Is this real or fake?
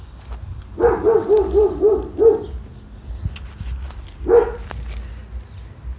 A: real